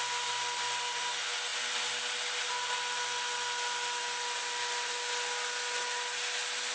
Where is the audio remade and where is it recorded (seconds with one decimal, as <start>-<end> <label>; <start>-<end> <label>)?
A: 0.0-6.7 recorded